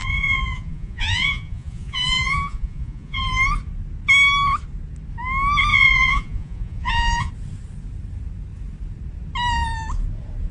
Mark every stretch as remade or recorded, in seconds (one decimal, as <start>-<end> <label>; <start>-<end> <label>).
0.0-3.2 remade; 3.2-5.7 recorded; 5.7-7.3 remade; 7.3-10.5 recorded